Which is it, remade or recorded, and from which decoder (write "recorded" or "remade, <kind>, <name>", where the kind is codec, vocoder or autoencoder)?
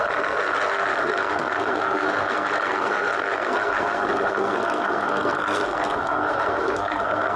remade, codec, SNAC